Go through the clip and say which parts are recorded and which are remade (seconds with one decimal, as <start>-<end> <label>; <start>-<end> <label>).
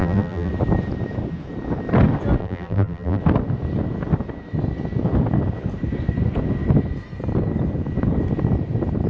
0.0-0.5 remade; 0.5-2.4 recorded; 2.4-3.2 remade; 3.2-9.1 recorded